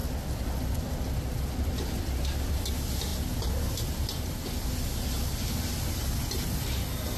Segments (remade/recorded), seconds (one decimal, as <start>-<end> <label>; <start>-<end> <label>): 0.0-7.2 recorded